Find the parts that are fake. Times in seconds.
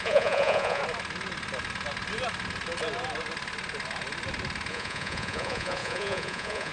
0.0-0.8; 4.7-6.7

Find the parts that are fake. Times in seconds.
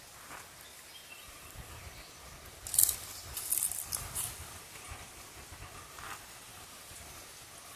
0.7-1.9; 6.5-7.2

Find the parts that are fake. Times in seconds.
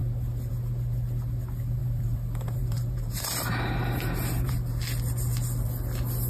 1.8-4.5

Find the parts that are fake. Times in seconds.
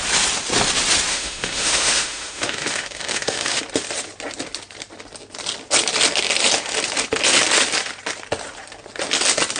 1.1-3.6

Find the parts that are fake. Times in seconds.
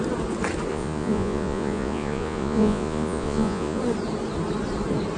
0.7-3.8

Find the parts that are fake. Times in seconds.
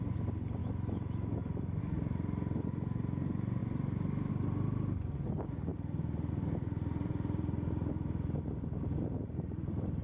0.6-1.8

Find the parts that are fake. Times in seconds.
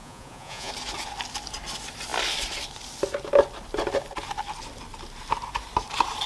0.0-0.7